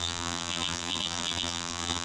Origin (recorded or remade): remade